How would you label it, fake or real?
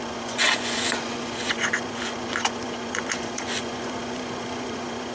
fake